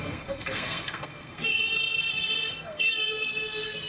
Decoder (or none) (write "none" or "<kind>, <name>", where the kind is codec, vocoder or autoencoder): codec, SNAC